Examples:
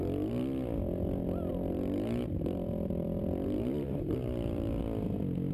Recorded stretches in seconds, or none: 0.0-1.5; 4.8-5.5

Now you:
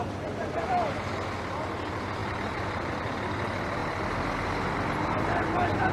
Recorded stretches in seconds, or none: 0.0-0.4; 1.1-2.2; 2.9-5.9

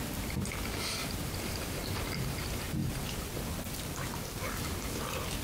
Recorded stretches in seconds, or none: 0.0-1.0; 2.0-2.8; 4.9-5.4

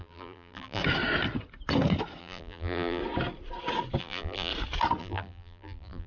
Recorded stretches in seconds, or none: 0.8-2.2; 3.0-4.0; 4.5-5.0

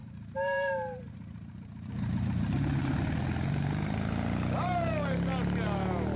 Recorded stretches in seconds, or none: 3.0-6.2

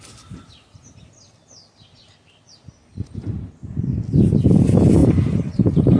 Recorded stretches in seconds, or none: 0.0-2.9; 3.7-5.0

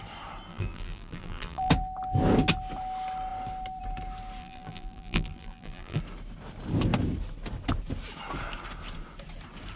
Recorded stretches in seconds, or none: 0.0-0.5; 1.7-4.4; 6.0-9.8

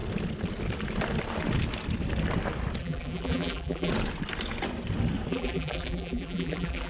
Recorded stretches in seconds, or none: 0.0-2.8; 3.9-5.3